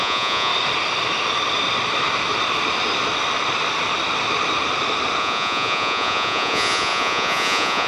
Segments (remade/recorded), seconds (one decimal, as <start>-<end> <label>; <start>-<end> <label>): 0.0-0.5 remade; 0.5-5.2 recorded; 5.2-7.9 remade